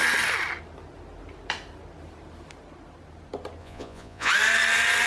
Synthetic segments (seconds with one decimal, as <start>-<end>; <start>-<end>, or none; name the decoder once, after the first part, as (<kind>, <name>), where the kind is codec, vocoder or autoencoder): 3.6-4.3 (vocoder, Vocos)

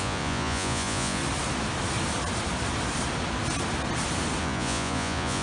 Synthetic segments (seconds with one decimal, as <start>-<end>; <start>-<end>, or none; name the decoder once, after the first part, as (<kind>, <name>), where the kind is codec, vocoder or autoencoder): 0.0-1.2 (vocoder, Vocos); 4.4-5.4

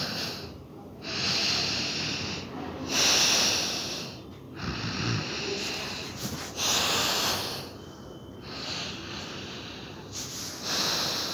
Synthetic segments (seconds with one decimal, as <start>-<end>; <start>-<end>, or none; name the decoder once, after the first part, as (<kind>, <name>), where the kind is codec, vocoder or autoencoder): none

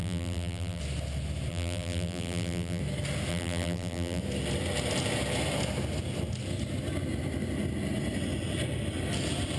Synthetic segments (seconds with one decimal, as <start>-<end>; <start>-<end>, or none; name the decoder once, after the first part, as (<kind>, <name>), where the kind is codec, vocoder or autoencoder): 0.0-0.8 (vocoder, BigVGAN v2); 1.5-2.8; 3.3-4.2